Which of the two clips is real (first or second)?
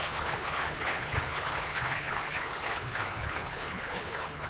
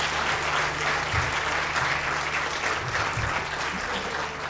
second